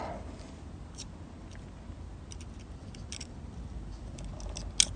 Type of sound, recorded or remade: recorded